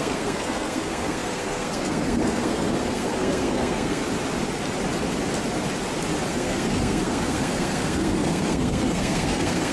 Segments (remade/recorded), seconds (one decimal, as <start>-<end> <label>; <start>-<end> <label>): 0.0-4.0 remade; 4.0-6.3 recorded; 6.3-9.7 remade